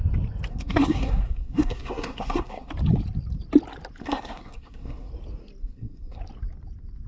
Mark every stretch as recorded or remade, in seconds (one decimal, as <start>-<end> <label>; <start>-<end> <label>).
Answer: 0.0-0.5 recorded; 0.5-2.7 remade; 2.7-4.0 recorded; 4.0-5.1 remade; 5.1-5.6 recorded; 5.6-6.2 remade; 6.2-7.1 recorded